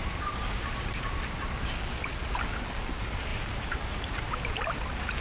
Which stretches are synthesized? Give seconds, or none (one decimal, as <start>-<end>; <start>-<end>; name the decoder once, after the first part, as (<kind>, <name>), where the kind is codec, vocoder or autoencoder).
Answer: 0.0-1.7 (vocoder, BigVGAN v2); 3.3-4.2